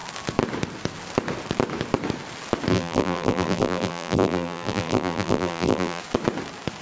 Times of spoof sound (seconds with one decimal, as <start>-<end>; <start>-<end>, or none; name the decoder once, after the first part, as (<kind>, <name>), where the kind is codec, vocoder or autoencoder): 2.7-6.0 (vocoder, BigVGAN v2)